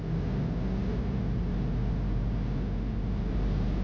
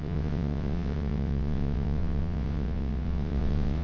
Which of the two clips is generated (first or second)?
second